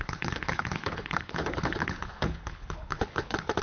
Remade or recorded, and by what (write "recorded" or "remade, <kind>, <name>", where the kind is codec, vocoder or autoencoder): remade, codec, HILCodec